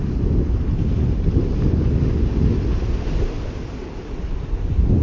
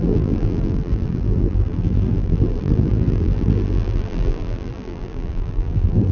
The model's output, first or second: second